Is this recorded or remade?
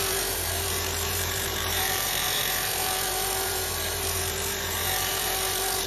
remade